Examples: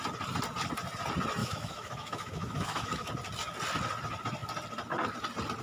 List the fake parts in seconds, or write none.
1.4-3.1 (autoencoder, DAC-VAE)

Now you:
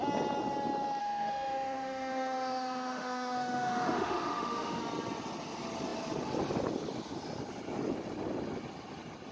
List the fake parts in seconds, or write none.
1.0-4.8 (autoencoder, DAC-VAE)